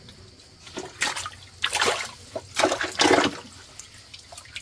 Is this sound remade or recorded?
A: recorded